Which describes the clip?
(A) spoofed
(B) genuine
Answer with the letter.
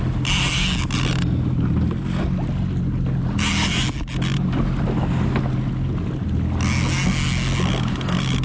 B